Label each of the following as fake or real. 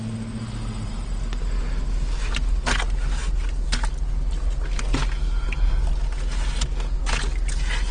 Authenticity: real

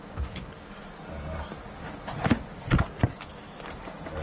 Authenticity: real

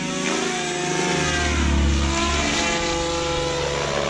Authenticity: real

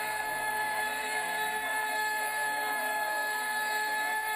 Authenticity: fake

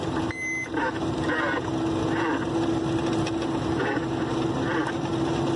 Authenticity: real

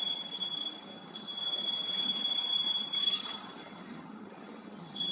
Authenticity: fake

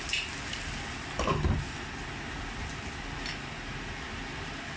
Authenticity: real